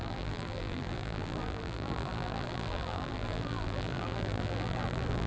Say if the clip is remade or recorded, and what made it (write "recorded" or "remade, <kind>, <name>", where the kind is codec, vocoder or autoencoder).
remade, vocoder, BigVGAN v2